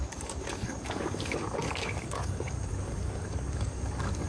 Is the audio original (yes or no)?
no